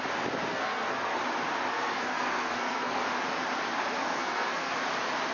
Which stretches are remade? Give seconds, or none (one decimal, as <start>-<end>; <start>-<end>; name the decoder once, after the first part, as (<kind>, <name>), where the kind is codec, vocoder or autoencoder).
0.5-1.2 (codec, SNAC); 1.7-3.0; 4.0-4.7